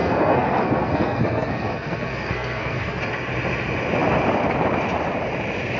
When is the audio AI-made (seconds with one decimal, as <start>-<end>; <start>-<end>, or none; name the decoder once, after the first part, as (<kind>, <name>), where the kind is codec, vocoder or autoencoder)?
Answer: 0.0-3.0 (codec, SNAC)